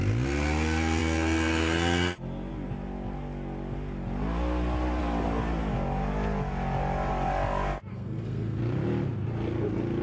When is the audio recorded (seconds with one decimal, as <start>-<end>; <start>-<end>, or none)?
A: 0.0-7.9; 8.6-10.0